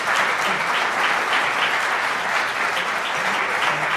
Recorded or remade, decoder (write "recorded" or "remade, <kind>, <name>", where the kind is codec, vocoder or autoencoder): recorded